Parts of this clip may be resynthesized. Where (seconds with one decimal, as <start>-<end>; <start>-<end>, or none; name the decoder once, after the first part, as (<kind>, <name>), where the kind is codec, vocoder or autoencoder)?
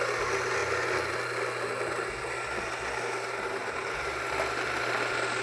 none